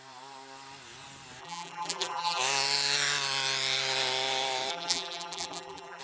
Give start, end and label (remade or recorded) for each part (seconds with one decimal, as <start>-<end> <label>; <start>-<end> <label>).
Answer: 0.0-1.4 recorded; 1.4-2.4 remade; 2.4-4.7 recorded; 4.7-6.0 remade